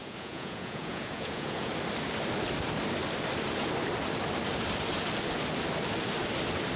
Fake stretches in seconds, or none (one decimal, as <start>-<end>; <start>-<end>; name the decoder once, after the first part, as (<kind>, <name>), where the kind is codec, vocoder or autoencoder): 0.0-1.7 (vocoder, Vocos)